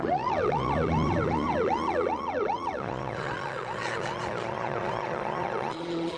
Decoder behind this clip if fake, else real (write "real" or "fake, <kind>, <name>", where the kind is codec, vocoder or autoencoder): fake, vocoder, Vocos